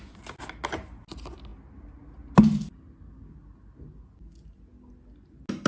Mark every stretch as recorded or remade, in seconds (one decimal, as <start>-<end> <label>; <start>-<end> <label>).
0.0-5.7 recorded